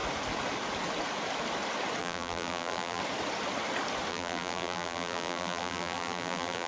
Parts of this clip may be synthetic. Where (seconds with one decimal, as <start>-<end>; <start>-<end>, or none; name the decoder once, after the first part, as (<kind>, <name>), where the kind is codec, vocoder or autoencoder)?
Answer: 2.0-3.0 (vocoder, BigVGAN v2); 4.1-6.7